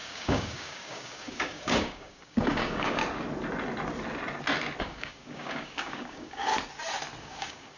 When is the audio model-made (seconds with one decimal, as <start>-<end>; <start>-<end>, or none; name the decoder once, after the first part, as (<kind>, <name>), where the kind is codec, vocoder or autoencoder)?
0.0-3.0 (codec, DAC); 4.8-6.5; 7.2-7.8